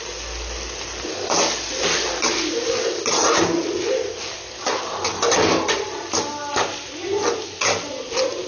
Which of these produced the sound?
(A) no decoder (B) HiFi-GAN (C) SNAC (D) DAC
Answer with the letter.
A